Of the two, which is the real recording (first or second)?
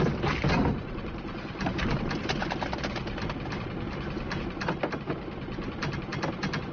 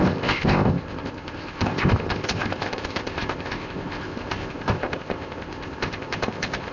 first